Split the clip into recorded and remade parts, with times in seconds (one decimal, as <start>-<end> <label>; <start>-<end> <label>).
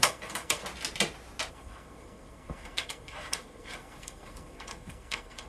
0.0-0.6 remade; 0.6-1.5 recorded; 1.5-5.5 remade